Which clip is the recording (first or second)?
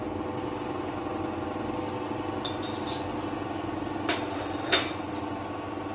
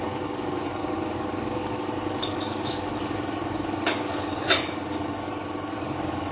first